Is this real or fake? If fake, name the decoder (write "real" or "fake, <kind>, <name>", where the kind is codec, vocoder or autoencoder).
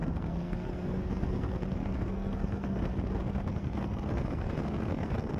fake, codec, SNAC